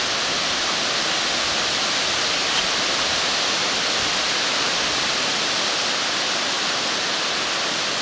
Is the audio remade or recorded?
recorded